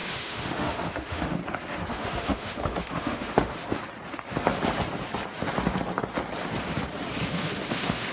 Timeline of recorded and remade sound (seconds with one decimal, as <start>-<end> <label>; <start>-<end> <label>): 0.0-1.4 remade; 1.4-1.9 recorded; 1.9-3.6 remade; 3.6-7.3 recorded; 7.3-8.1 remade